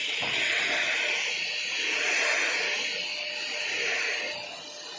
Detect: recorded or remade recorded